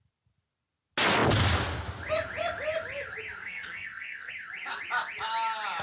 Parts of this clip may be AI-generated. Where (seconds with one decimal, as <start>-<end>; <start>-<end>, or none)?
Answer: 3.4-4.3